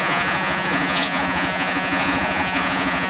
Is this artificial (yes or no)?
yes